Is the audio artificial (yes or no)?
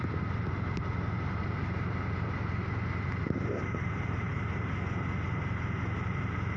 no